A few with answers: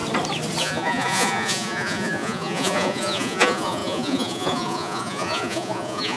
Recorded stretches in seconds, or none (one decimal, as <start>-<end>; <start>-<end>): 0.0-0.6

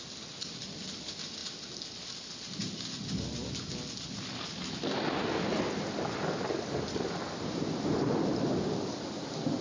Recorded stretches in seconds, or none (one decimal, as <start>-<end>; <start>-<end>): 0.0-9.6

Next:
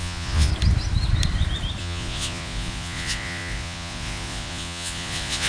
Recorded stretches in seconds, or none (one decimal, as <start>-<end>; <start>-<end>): 0.5-1.8

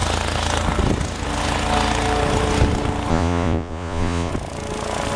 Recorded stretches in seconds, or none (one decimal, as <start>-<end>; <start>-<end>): 0.0-3.1; 4.3-5.2

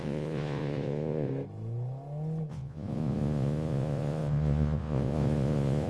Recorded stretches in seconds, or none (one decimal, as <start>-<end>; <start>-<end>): 1.3-2.5

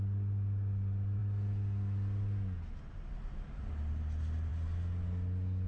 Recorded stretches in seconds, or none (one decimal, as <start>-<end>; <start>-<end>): 0.0-5.7